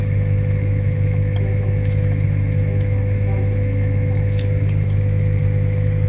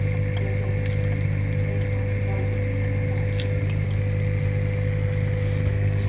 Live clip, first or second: second